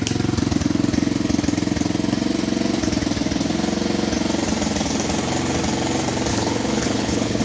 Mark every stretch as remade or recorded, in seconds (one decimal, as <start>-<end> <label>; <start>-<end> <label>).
0.0-6.3 recorded; 6.3-7.4 remade